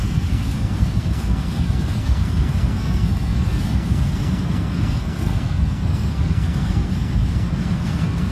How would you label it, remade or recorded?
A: remade